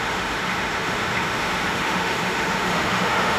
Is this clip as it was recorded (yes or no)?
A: no